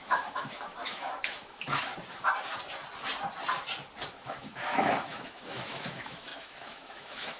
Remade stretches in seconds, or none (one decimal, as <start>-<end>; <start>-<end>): 0.0-1.9; 4.1-7.4